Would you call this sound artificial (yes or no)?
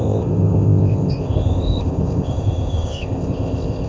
yes